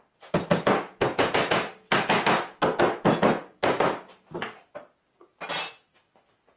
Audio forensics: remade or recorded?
recorded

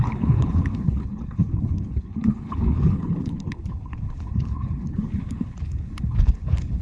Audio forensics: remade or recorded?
remade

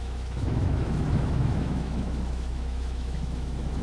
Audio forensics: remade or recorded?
remade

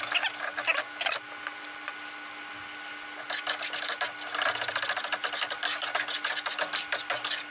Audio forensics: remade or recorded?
recorded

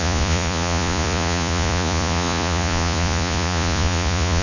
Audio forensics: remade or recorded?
remade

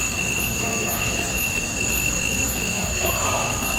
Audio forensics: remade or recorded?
remade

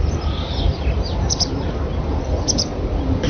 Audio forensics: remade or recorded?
recorded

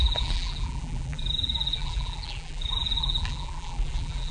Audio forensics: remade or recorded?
remade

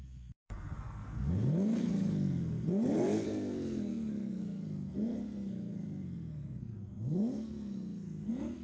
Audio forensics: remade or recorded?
remade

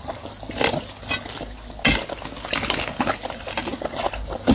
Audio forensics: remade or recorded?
recorded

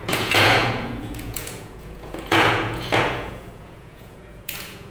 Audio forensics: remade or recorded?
remade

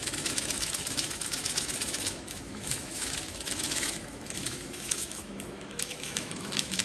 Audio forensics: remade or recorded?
remade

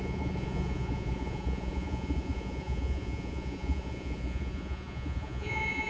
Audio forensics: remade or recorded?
remade